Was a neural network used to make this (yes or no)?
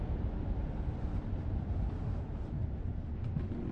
no